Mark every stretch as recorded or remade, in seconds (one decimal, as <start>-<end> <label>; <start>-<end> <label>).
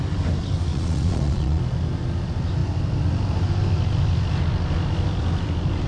0.0-0.7 recorded; 0.7-1.6 remade; 1.6-5.9 recorded